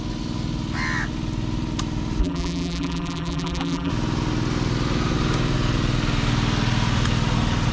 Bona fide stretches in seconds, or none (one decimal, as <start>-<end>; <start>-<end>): 0.0-2.2; 3.9-7.7